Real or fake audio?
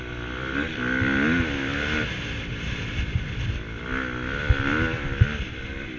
real